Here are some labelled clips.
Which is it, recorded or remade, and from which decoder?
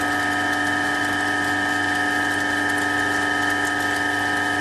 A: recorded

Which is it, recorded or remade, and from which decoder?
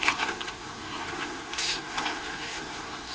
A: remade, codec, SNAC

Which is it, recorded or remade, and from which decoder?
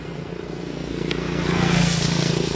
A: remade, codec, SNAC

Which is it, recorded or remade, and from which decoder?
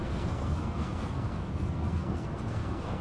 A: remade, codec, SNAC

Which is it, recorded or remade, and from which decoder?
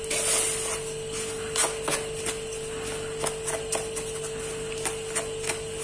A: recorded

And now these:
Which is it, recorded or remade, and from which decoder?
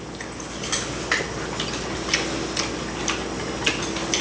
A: recorded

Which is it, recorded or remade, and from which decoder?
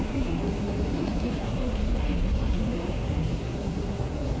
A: remade, codec, SNAC